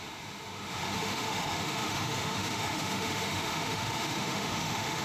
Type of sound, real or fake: fake